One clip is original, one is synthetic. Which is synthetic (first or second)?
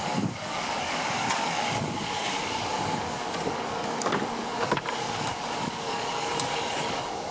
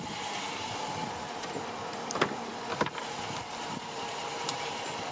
first